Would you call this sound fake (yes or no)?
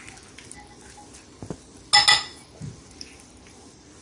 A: no